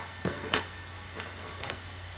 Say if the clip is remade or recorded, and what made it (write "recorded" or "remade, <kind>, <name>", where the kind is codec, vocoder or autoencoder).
remade, codec, SNAC